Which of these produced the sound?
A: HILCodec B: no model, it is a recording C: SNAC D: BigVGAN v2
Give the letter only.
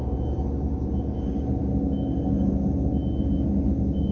B